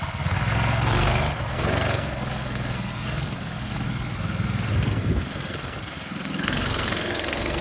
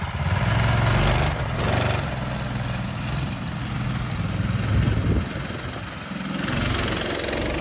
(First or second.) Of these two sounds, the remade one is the first